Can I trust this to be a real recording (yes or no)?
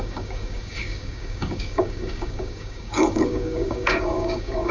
no